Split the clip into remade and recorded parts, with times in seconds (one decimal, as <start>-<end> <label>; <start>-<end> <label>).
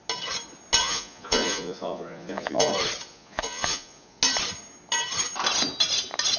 0.0-0.8 recorded; 0.8-2.7 remade; 2.7-3.1 recorded; 3.1-4.2 remade; 4.2-6.4 recorded